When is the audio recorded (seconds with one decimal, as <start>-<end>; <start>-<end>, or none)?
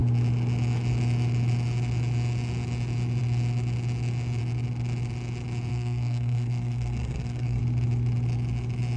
0.0-5.7; 7.6-9.0